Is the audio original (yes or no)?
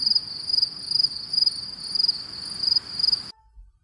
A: yes